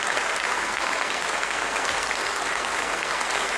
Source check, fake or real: fake